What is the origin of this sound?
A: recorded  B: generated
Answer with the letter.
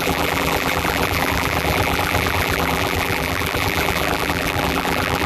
B